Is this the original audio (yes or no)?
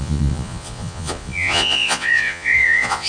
no